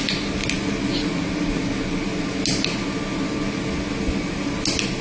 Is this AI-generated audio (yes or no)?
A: no